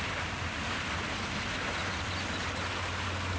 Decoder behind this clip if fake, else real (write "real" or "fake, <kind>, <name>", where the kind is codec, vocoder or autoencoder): real